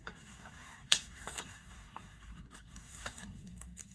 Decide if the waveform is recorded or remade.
remade